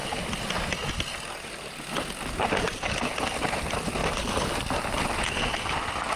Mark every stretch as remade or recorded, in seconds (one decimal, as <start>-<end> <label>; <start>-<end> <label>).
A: 0.0-4.0 recorded; 4.0-5.2 remade; 5.2-6.2 recorded